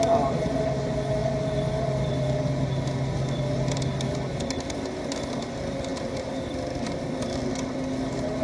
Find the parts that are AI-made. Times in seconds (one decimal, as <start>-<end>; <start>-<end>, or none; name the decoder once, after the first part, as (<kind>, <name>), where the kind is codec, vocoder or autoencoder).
none